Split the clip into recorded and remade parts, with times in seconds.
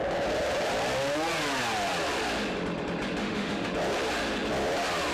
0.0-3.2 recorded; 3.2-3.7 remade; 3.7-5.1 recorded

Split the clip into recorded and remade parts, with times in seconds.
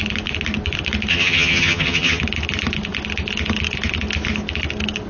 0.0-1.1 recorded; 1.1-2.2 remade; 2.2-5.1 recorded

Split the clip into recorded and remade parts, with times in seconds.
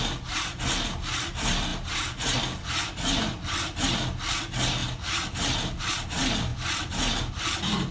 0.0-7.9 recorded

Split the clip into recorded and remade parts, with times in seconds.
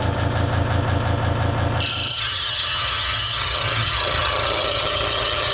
0.0-2.1 recorded; 2.1-5.5 remade